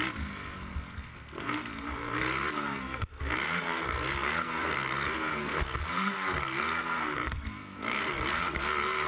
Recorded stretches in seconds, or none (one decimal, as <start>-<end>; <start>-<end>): none